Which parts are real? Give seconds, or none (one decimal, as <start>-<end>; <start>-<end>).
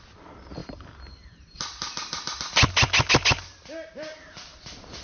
0.0-5.0